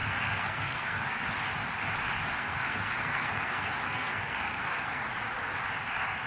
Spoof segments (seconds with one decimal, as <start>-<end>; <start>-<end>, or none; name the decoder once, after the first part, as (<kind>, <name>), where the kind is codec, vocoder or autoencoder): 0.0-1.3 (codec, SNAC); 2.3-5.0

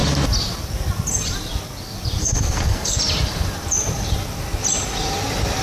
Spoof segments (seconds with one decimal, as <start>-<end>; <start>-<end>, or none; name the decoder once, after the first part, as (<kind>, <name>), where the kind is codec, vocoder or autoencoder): 2.2-3.0 (codec, SNAC)

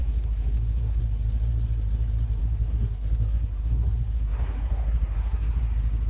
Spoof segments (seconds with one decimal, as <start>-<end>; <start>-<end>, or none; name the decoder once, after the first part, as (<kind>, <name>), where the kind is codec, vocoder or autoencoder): 0.0-1.0 (codec, SNAC); 2.4-5.6

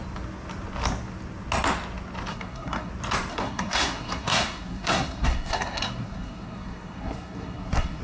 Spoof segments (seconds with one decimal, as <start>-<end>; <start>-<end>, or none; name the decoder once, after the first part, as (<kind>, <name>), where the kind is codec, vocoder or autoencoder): 2.3-2.9 (codec, SNAC); 3.3-8.0

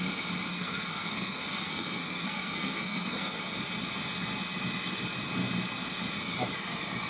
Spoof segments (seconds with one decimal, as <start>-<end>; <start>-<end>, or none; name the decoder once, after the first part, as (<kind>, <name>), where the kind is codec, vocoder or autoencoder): 0.5-3.4 (codec, SNAC)